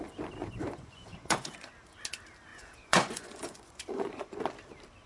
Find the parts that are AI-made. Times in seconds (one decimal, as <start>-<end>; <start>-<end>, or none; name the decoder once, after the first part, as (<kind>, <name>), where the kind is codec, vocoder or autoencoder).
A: 0.4-1.7 (vocoder, Vocos); 2.5-4.4